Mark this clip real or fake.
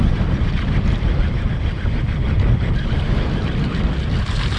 real